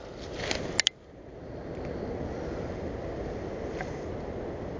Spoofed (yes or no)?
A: no